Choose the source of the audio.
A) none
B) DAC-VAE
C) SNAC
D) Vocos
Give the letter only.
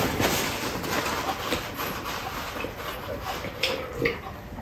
A